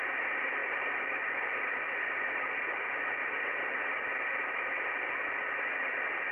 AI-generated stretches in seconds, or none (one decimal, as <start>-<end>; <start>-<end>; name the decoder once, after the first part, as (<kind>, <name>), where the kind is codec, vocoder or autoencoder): 0.6-4.1 (vocoder, BigVGAN v2)